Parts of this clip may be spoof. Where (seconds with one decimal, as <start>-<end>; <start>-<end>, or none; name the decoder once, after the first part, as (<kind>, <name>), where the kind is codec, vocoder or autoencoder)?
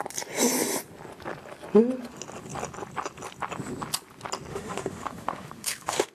4.5-6.1 (autoencoder, DAC-VAE)